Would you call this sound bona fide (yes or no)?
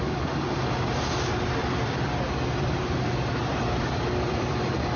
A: no